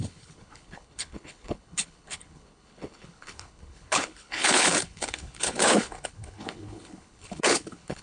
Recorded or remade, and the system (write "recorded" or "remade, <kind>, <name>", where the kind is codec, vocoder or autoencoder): remade, codec, HILCodec